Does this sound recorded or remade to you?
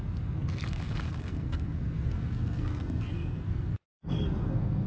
remade